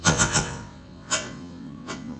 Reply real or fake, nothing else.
fake